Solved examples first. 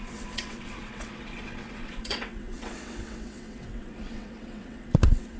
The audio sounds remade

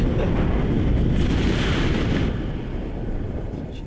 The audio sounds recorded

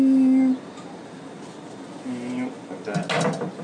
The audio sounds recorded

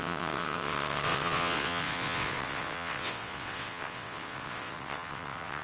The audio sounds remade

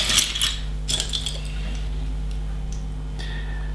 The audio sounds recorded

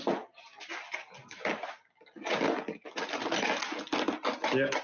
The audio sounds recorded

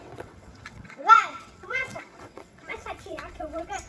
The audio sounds remade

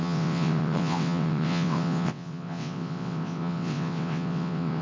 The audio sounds remade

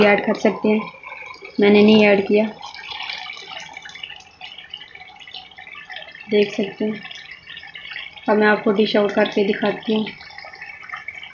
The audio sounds recorded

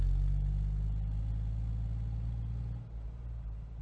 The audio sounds recorded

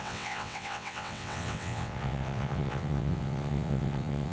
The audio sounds remade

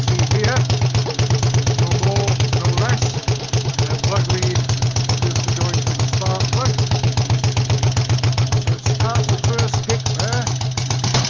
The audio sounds recorded